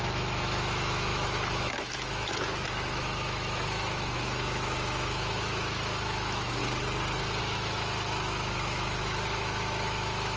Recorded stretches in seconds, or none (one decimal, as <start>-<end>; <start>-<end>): 6.6-7.4